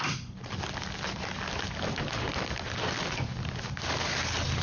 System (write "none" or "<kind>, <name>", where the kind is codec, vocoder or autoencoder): none